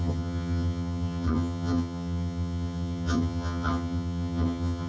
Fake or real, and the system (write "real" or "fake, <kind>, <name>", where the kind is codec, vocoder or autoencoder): fake, vocoder, HiFi-GAN